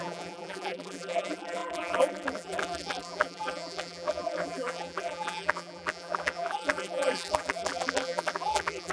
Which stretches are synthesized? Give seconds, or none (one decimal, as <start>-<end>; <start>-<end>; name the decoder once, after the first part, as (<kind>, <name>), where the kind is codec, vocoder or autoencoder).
0.0-8.9 (vocoder, BigVGAN v2)